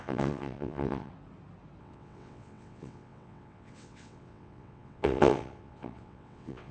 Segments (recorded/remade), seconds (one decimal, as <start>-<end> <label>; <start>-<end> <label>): 0.0-1.1 remade; 1.1-1.8 recorded; 1.8-6.7 remade